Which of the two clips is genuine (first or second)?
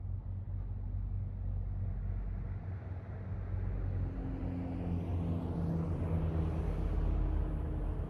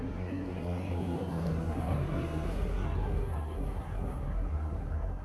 first